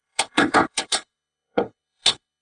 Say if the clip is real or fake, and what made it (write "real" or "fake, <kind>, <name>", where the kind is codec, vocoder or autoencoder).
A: fake, codec, HILCodec